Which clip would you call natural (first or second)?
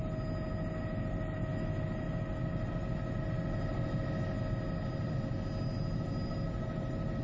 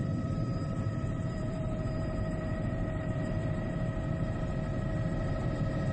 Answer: first